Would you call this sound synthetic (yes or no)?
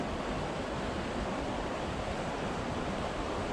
no